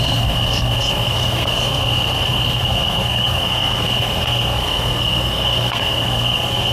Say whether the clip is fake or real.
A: fake